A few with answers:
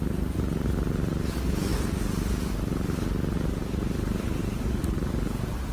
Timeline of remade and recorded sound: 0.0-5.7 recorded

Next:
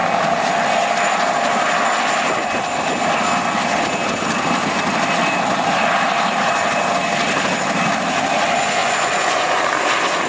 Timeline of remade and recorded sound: 0.0-8.8 recorded; 8.8-9.6 remade; 9.6-10.3 recorded

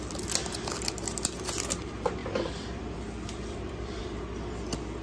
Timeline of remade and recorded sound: 0.0-2.2 recorded; 2.2-4.0 remade; 4.0-5.0 recorded

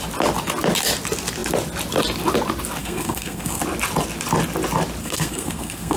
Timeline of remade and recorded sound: 0.0-2.8 recorded; 2.8-3.6 remade; 3.6-5.0 recorded; 5.0-6.0 remade

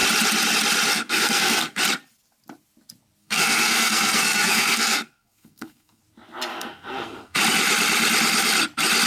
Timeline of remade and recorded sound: 0.0-0.9 recorded; 0.9-1.8 remade; 1.8-3.2 recorded; 3.2-6.0 remade; 6.0-6.5 recorded; 6.5-7.4 remade; 7.4-9.1 recorded

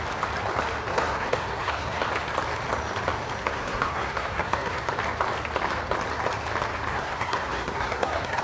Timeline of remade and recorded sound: 0.0-0.9 recorded; 0.9-2.0 remade; 2.0-3.4 recorded; 3.4-4.9 remade; 4.9-6.9 recorded; 6.9-8.4 remade

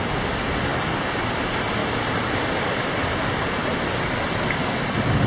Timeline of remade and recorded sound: 0.0-5.3 recorded

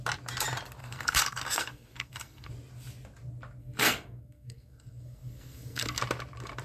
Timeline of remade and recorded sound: 0.0-0.8 recorded; 0.8-2.5 remade; 2.5-3.6 recorded; 3.6-6.0 remade; 6.0-6.6 recorded